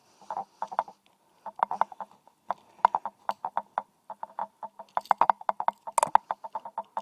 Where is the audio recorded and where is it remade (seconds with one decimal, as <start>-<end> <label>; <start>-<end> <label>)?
0.0-7.0 recorded